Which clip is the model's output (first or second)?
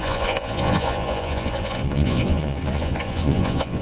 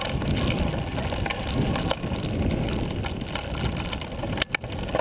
first